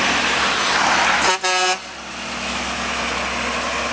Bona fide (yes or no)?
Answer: yes